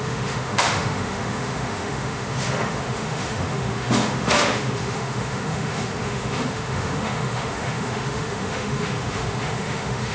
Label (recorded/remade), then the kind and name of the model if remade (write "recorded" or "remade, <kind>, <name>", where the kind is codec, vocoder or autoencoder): remade, autoencoder, DAC-VAE